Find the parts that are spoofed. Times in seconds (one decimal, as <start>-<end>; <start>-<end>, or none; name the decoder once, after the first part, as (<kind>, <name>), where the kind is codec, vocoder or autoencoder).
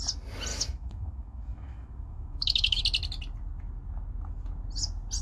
0.5-2.8 (autoencoder, DAC-VAE)